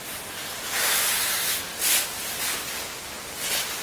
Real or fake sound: real